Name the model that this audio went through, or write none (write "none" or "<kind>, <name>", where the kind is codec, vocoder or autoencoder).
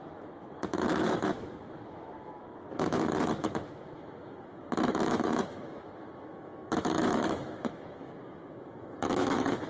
autoencoder, DAC-VAE